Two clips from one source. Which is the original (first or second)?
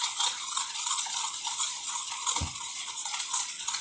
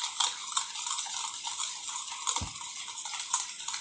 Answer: second